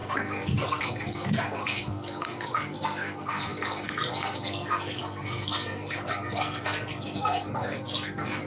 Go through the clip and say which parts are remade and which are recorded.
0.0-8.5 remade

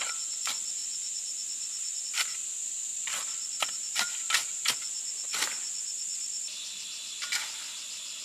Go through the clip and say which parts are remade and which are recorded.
0.0-8.2 recorded

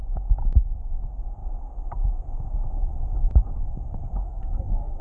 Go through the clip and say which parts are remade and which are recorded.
0.0-4.2 recorded; 4.2-5.0 remade

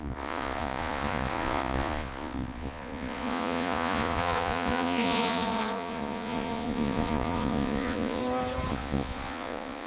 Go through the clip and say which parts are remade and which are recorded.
0.0-8.2 remade; 8.2-8.7 recorded; 8.7-9.9 remade